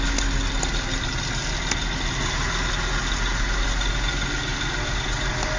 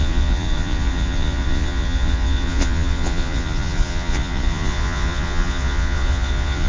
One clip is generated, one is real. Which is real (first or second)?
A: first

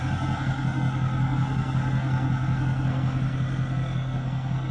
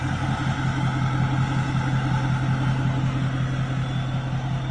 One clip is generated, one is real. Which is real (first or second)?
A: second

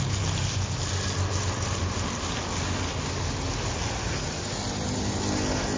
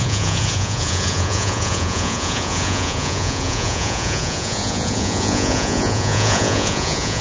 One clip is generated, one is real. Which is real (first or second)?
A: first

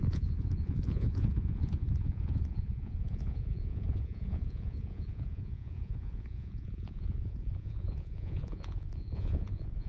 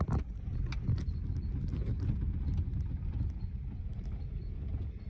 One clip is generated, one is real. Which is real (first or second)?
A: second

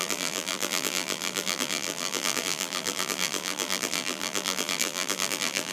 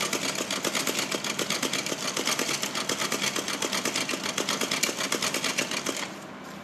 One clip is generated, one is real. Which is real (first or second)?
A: second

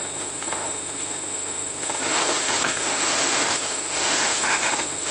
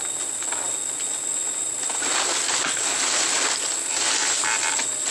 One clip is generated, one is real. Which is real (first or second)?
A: second